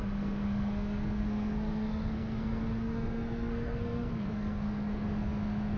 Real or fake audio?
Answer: fake